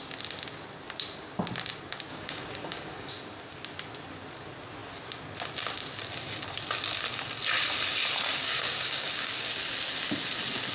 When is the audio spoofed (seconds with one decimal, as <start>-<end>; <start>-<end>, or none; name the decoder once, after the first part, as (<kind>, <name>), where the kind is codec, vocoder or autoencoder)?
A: 2.1-3.1 (codec, DAC); 8.4-9.3